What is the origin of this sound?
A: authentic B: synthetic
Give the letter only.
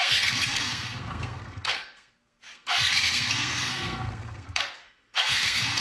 B